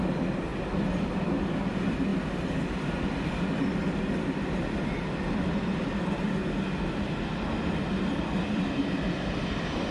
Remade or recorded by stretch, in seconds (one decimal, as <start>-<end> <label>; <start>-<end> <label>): 0.0-9.9 recorded